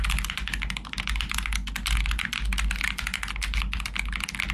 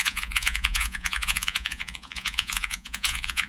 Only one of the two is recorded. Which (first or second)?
first